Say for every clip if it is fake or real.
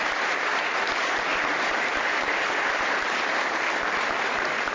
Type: fake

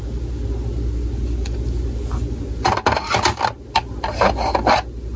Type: real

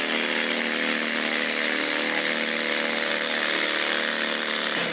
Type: real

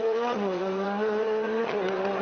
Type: fake